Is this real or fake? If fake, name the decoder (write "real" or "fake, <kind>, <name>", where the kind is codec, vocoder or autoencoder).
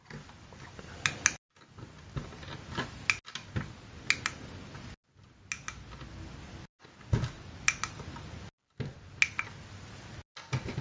real